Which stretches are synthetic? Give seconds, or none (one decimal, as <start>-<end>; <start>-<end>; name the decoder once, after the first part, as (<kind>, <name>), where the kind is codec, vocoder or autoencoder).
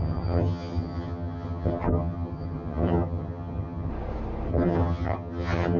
0.0-3.9 (vocoder, HiFi-GAN); 4.5-5.8